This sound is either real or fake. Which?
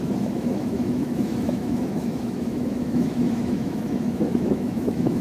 fake